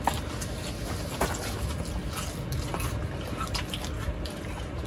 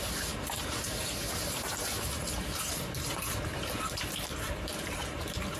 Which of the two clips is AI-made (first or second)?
second